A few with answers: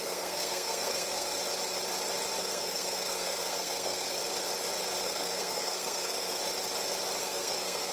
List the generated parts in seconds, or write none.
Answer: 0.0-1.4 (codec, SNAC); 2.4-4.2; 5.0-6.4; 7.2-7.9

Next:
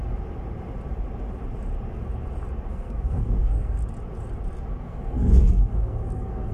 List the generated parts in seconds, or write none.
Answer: 2.7-3.8 (codec, SNAC); 4.8-6.5